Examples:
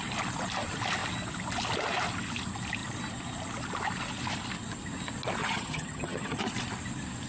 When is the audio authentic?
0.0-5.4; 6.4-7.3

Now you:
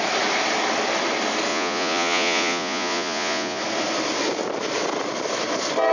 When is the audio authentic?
0.0-1.5; 3.6-5.9

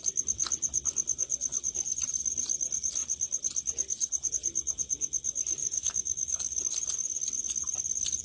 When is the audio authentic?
0.0-5.6; 6.6-8.2

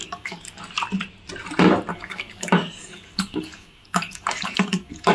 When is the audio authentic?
0.6-1.9

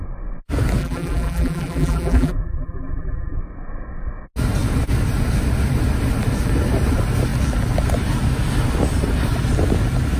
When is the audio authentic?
0.0-0.8; 3.4-10.2

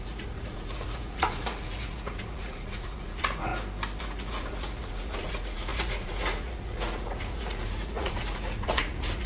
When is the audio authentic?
3.5-4.0